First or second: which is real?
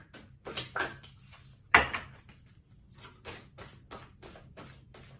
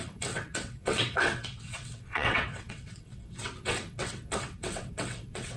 first